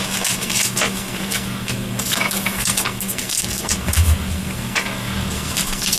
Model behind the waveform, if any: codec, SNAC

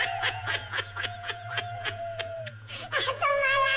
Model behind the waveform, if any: vocoder, Vocos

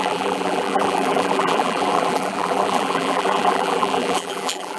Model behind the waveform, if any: vocoder, BigVGAN v2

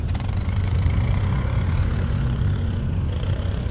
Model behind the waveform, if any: vocoder, Vocos